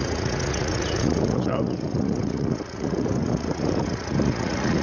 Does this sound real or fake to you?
fake